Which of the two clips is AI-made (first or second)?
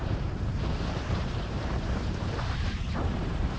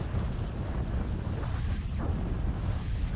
first